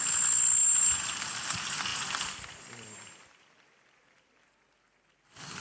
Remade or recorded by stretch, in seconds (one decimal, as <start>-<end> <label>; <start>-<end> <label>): 0.0-0.6 recorded; 0.6-1.3 remade; 1.3-1.9 recorded; 1.9-4.4 remade; 4.4-5.6 recorded